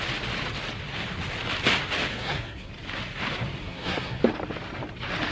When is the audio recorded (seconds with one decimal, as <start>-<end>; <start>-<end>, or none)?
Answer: 0.0-2.1; 2.7-3.6; 4.2-5.3